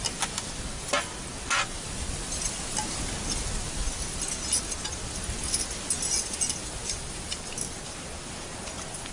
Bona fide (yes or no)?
yes